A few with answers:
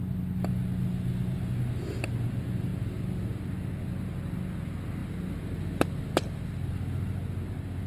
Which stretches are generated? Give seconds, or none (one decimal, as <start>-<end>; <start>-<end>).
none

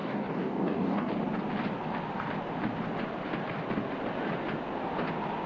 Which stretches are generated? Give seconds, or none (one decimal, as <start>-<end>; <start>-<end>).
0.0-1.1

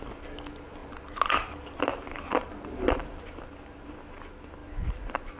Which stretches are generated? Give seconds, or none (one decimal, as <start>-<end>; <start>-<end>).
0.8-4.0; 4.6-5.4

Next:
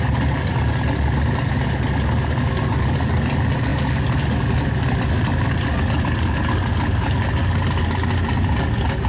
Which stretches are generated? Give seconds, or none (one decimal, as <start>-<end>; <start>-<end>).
none

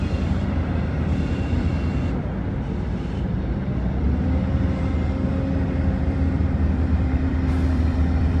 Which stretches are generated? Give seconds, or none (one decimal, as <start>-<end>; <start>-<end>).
0.0-1.7; 4.0-4.9; 5.6-8.4

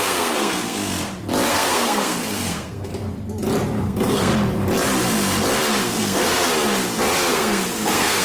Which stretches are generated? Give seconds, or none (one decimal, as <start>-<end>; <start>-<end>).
0.0-0.8; 1.5-2.9; 3.8-4.3; 5.8-6.5; 7.3-8.2